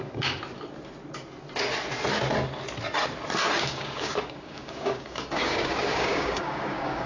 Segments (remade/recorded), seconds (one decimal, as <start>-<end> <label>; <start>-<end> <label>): 0.0-0.4 remade; 0.4-3.6 recorded; 3.6-7.1 remade